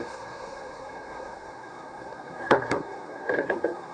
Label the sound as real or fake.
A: fake